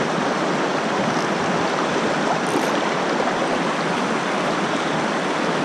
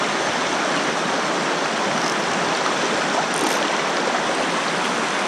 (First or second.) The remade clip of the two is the first